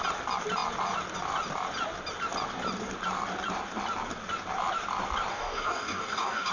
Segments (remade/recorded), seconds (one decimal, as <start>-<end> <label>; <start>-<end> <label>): 0.0-5.3 recorded; 5.3-6.5 remade